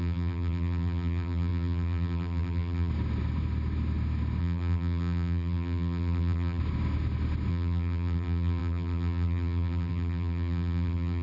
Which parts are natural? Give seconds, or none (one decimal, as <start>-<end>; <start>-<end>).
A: 2.9-4.4; 6.6-7.5

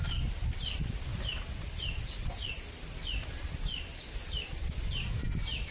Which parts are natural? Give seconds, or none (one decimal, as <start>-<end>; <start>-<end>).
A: 1.1-4.5

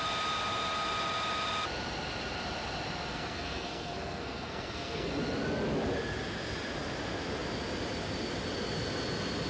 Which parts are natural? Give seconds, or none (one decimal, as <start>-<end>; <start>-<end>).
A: 0.0-3.1; 5.1-9.5

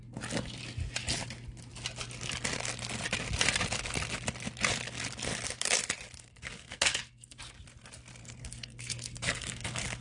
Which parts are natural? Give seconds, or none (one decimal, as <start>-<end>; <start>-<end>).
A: 0.0-6.2; 7.4-8.2